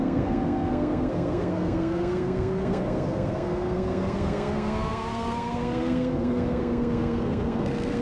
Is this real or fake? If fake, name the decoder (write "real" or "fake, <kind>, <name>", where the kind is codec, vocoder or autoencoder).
fake, codec, SNAC